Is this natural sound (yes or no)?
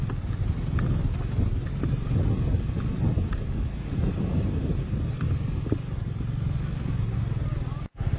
yes